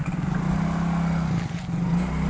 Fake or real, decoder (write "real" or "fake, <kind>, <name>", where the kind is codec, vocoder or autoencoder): real